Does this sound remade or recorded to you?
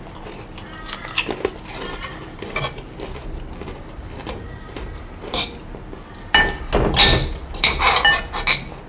recorded